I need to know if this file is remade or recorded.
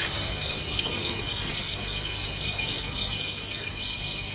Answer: remade